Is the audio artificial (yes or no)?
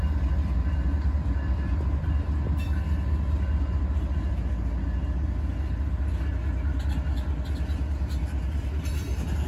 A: no